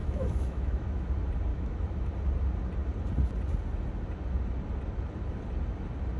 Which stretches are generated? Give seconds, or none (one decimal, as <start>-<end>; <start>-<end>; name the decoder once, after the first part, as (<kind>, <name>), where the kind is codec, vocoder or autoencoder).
0.0-1.1 (autoencoder, DAC-VAE); 1.5-2.1